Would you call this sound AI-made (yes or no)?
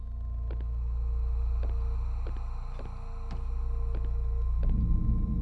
no